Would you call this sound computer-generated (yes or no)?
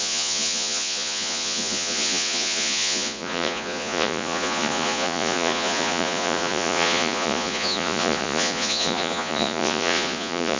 yes